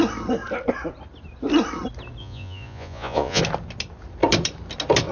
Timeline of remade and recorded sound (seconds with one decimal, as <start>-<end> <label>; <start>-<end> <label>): 0.0-2.2 recorded; 2.2-3.4 remade; 3.4-5.1 recorded